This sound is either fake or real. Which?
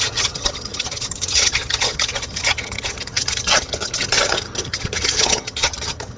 fake